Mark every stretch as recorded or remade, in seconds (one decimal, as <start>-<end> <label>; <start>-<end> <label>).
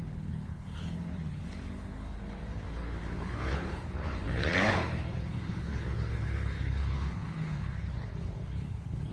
0.0-9.1 remade